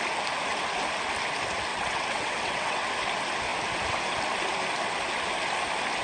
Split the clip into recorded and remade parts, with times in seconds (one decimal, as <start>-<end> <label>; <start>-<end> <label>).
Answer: 0.0-1.7 recorded; 1.7-2.9 remade; 2.9-6.0 recorded